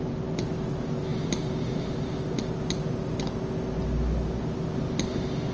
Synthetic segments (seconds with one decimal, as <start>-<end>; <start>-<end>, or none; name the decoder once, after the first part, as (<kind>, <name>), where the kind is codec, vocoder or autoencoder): none